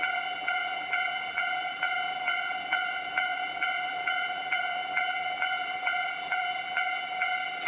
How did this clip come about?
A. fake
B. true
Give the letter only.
A